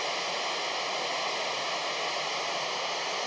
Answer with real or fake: real